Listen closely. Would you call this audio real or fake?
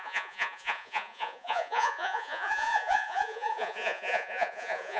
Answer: fake